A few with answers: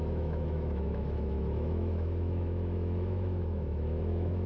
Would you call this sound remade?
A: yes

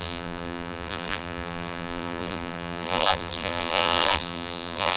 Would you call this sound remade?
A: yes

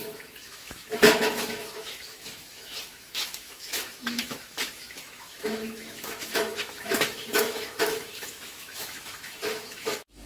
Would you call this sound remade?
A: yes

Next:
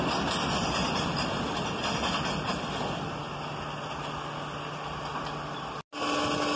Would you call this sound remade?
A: no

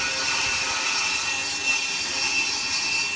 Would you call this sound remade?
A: no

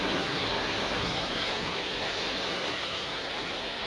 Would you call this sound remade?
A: yes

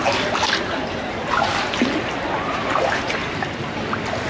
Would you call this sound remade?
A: no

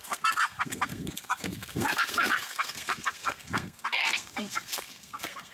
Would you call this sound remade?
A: yes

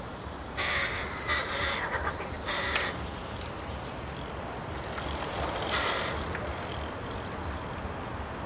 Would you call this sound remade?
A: yes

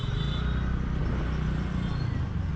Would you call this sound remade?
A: no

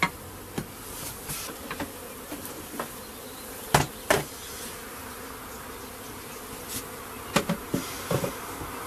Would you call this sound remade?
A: no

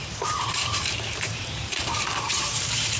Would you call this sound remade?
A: yes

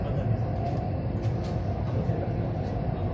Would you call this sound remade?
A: no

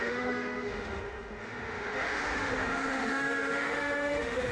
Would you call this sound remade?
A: yes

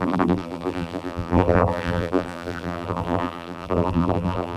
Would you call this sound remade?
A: yes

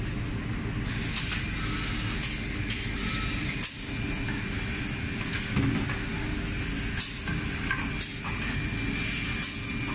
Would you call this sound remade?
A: no